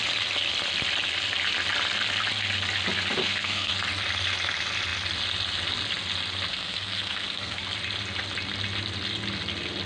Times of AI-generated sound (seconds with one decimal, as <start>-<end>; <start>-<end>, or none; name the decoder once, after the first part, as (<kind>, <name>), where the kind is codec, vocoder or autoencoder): 3.2-3.7 (codec, SNAC); 6.5-7.6